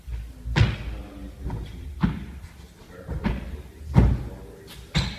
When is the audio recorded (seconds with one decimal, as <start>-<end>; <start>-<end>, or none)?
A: 0.0-1.2; 3.3-5.2

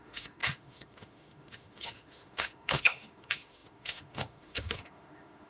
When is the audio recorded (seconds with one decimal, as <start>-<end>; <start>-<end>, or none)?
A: none